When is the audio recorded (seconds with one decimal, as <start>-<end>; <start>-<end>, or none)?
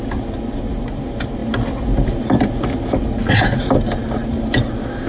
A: 0.0-5.1